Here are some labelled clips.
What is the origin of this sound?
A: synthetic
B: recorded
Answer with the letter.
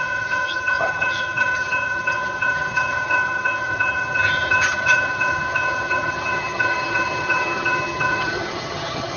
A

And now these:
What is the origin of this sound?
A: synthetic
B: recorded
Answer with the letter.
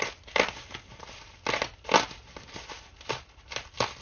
B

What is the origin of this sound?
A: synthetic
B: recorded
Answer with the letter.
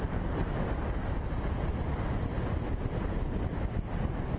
B